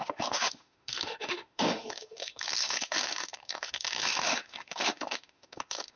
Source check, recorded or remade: remade